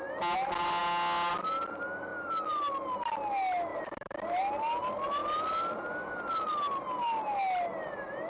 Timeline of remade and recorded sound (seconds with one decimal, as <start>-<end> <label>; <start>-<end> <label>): 0.0-3.7 recorded; 3.7-4.4 remade; 4.4-8.3 recorded

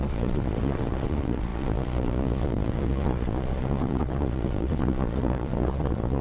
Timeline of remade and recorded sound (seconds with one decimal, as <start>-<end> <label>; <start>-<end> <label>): 0.0-6.2 remade